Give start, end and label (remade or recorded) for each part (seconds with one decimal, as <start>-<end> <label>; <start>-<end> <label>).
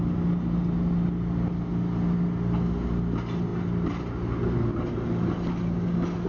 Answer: 0.0-6.3 recorded